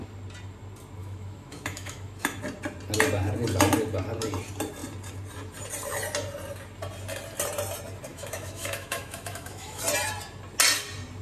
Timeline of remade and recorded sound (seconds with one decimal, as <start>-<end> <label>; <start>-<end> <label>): 0.0-1.0 recorded; 1.0-2.4 remade; 2.4-8.1 recorded; 8.1-9.8 remade; 9.8-11.2 recorded

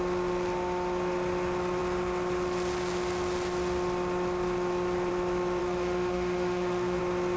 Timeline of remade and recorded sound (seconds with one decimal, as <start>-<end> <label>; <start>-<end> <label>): 0.0-5.6 recorded; 5.6-7.0 remade; 7.0-7.4 recorded

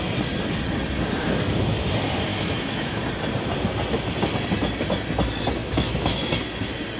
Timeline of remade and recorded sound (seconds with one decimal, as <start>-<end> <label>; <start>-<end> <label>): 0.0-2.3 recorded; 2.3-3.0 remade; 3.0-5.6 recorded; 5.6-6.3 remade; 6.3-7.0 recorded

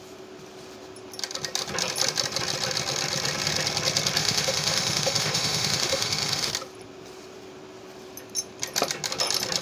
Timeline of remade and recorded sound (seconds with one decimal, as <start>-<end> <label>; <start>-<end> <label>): 0.0-4.2 recorded; 4.2-6.5 remade; 6.5-9.6 recorded

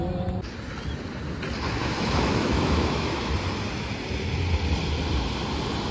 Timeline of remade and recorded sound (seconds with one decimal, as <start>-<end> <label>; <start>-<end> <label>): 0.0-1.8 recorded; 1.8-3.3 remade; 3.3-5.9 recorded

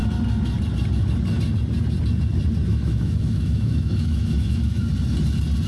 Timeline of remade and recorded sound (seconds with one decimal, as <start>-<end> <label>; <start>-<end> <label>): 0.0-2.7 recorded; 2.7-4.8 remade; 4.8-5.7 recorded

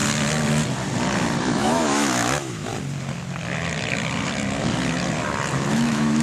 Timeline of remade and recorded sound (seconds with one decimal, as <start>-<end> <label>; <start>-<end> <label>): 0.0-1.4 recorded; 1.4-2.7 remade; 2.7-5.7 recorded; 5.7-6.2 remade

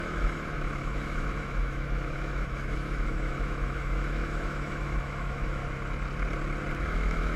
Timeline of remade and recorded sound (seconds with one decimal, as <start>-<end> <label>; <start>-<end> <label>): 0.0-5.6 remade; 5.6-6.8 recorded; 6.8-7.4 remade